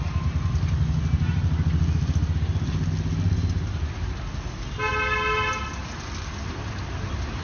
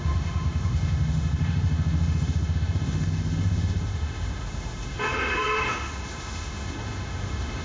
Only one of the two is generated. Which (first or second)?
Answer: second